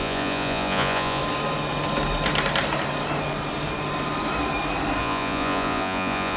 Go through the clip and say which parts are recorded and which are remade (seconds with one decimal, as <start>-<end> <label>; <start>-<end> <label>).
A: 0.0-1.2 remade; 1.2-5.0 recorded; 5.0-6.4 remade